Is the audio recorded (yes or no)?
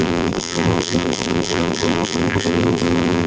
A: no